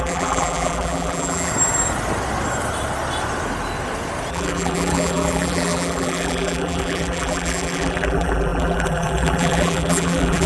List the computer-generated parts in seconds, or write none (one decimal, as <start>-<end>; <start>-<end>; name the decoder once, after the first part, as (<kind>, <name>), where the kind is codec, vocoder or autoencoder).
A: 0.0-1.5 (vocoder, BigVGAN v2); 4.3-10.5